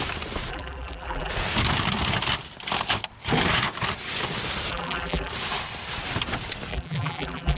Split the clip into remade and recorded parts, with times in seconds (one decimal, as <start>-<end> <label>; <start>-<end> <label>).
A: 0.0-0.5 recorded; 0.5-1.3 remade; 1.3-4.7 recorded; 4.7-5.3 remade; 5.3-6.7 recorded; 6.7-7.6 remade